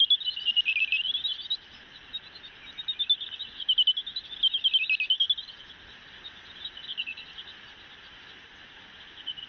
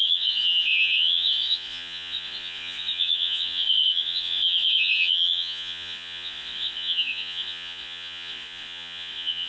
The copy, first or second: second